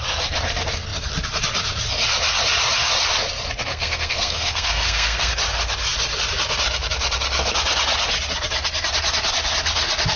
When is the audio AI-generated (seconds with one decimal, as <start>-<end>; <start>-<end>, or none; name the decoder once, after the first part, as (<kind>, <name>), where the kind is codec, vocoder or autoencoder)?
3.7-5.3 (codec, SNAC)